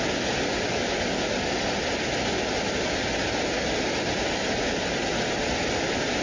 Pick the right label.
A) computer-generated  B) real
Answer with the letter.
B